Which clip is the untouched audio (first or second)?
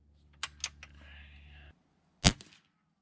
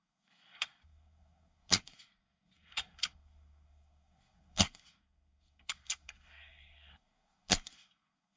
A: first